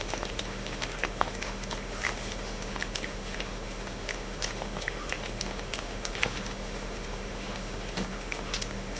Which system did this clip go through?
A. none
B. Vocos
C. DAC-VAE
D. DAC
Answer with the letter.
C